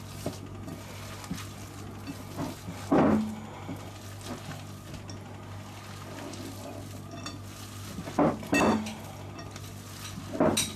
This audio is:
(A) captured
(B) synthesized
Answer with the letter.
A